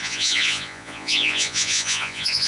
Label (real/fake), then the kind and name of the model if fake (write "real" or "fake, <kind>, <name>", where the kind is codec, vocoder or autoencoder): fake, vocoder, Vocos